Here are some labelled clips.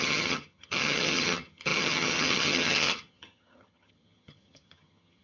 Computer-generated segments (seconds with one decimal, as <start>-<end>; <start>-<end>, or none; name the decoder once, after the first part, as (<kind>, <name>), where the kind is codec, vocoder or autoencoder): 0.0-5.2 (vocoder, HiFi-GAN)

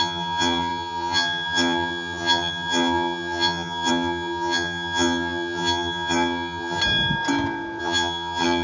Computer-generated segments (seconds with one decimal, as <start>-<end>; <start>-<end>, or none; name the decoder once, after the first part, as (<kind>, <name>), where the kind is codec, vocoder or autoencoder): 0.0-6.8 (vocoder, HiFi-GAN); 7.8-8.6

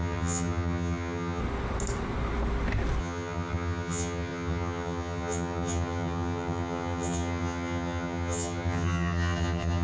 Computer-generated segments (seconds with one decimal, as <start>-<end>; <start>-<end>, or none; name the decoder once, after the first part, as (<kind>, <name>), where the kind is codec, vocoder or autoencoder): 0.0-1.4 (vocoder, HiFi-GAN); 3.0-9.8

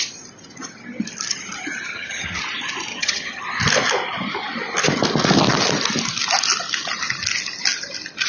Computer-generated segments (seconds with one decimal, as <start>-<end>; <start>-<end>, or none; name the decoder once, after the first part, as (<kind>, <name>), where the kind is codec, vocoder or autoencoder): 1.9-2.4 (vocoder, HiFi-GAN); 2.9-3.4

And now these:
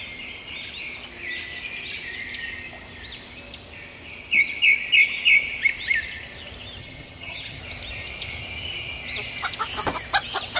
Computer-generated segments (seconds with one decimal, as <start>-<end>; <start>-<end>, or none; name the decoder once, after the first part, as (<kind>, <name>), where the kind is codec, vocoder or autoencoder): 6.8-7.6 (vocoder, HiFi-GAN)

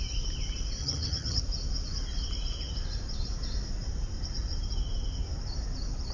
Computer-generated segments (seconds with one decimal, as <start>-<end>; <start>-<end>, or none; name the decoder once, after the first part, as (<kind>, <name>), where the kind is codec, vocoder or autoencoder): 0.8-1.4 (vocoder, HiFi-GAN)